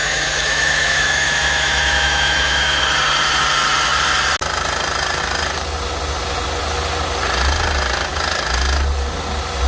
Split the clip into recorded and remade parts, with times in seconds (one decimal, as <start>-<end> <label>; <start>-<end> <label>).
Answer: 0.0-2.8 remade; 2.8-9.7 recorded